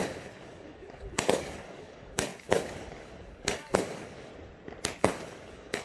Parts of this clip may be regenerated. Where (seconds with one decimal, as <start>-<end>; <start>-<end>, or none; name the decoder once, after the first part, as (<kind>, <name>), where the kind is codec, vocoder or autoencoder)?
0.0-4.3 (codec, DAC); 5.0-5.8